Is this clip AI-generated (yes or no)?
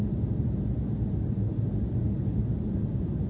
no